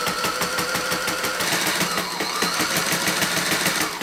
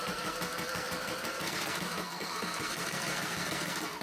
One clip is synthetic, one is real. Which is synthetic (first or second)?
second